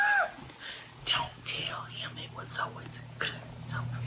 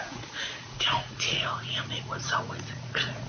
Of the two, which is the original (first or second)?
first